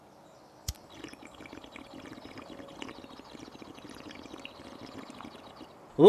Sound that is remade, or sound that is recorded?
recorded